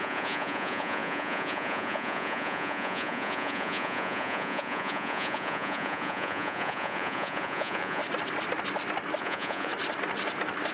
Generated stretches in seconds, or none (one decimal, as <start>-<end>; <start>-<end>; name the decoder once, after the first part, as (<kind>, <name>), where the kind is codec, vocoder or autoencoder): 0.0-8.0 (vocoder, Vocos); 9.2-9.7